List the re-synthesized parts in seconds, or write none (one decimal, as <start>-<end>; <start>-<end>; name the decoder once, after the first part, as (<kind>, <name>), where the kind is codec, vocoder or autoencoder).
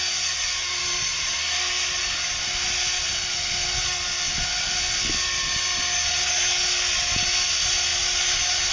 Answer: none